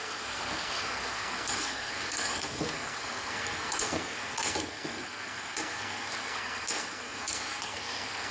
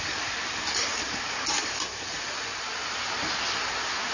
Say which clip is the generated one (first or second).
first